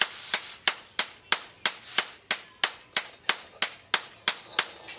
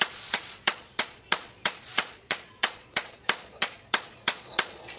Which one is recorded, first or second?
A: first